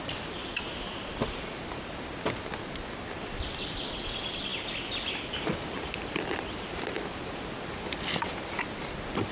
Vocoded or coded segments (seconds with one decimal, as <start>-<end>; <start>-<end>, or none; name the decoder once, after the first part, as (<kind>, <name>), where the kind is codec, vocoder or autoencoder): none